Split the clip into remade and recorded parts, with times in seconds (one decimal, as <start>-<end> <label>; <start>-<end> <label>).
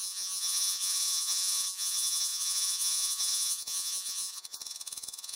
0.0-5.4 remade